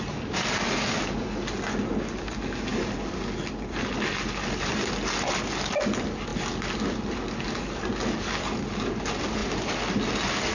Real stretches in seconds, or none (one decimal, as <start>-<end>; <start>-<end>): 0.0-10.5

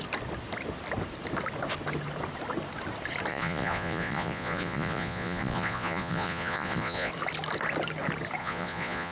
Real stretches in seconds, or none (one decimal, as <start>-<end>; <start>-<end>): 0.0-3.3; 7.1-8.4

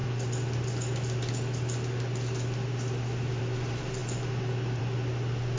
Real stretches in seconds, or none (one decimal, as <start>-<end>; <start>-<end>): 0.0-5.6

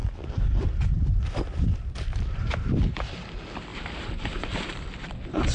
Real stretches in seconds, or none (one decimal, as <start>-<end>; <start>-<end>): 3.3-3.7; 5.1-5.5

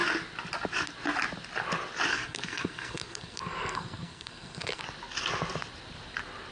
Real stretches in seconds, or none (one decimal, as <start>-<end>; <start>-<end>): 0.0-2.1; 4.8-6.5

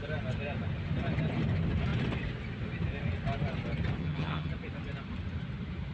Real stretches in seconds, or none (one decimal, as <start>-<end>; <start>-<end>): 0.0-4.0; 4.5-5.9

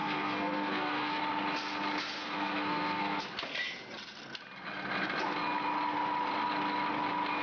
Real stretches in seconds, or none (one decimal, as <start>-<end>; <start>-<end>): 1.2-2.2; 3.2-7.4

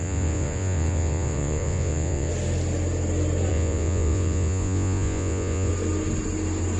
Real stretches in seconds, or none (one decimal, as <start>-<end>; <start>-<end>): 2.3-3.5; 5.7-6.8